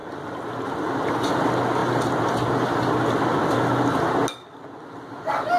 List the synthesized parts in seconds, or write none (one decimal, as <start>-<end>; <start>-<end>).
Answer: 0.0-1.3

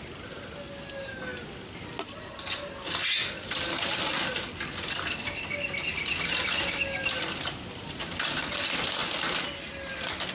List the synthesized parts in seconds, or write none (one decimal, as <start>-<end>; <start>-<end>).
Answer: 5.9-7.2

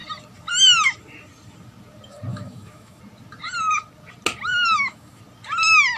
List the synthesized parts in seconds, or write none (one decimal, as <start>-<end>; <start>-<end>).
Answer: 2.3-3.0; 4.5-5.2

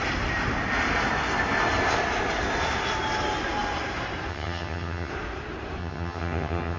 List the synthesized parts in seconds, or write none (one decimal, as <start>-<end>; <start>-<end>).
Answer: 4.3-5.1; 5.8-6.8

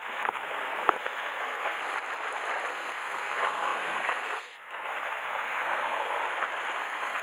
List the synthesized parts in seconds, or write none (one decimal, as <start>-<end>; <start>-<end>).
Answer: 0.0-1.8; 2.7-6.2; 6.8-7.2

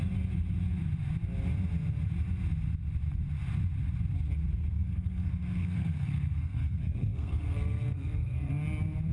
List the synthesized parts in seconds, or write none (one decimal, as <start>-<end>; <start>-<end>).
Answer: 4.5-8.5

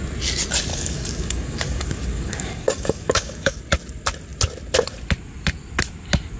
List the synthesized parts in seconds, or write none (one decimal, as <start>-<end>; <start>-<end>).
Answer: 0.7-3.6